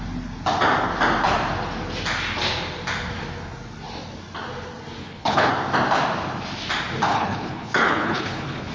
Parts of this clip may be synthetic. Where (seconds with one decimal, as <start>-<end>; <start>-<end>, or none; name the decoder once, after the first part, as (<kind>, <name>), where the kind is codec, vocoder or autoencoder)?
5.0-5.5 (codec, HILCodec); 7.1-8.7